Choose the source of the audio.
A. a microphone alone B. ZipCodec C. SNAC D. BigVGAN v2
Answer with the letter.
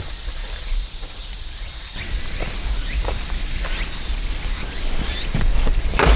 D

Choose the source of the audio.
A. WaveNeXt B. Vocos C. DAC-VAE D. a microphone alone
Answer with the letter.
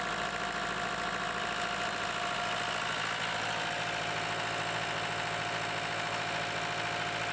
D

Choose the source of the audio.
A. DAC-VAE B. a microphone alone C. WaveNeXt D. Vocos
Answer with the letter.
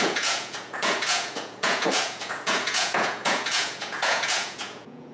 D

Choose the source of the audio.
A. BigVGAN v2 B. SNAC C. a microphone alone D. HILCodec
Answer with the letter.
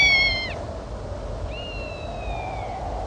C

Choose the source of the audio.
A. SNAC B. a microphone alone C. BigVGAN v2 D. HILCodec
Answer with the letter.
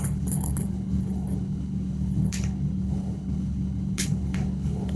D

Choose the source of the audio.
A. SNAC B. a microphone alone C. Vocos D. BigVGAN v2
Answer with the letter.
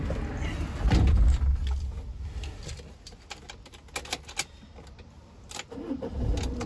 B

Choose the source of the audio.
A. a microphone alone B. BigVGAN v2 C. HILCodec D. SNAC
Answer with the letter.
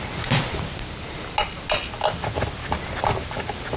A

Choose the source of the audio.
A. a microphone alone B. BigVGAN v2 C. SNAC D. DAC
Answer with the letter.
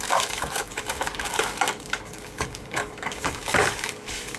D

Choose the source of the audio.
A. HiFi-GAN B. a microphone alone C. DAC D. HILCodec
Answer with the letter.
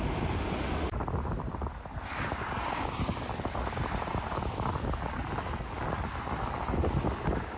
B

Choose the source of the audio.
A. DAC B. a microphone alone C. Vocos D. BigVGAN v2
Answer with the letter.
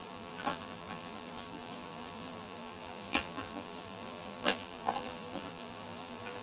D